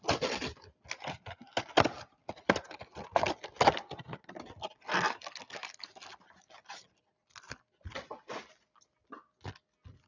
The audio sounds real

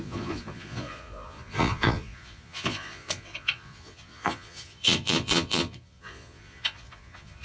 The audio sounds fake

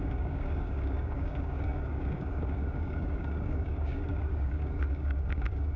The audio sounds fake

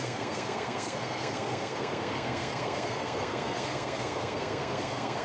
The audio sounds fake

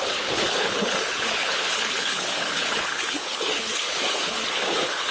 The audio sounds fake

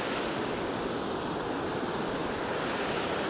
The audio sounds real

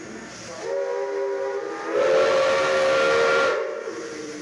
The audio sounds real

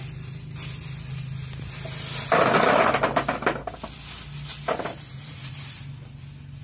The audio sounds real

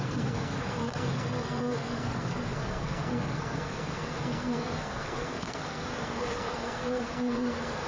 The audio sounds fake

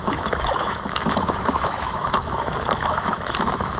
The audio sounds fake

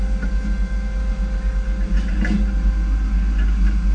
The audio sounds real